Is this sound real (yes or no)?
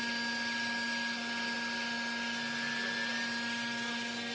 yes